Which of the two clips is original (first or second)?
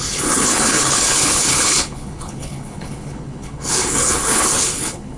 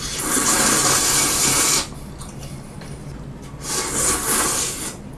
second